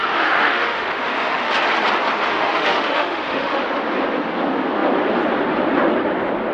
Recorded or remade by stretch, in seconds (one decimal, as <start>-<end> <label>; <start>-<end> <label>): 0.0-1.5 remade; 1.5-2.3 recorded; 2.3-3.6 remade; 3.6-6.5 recorded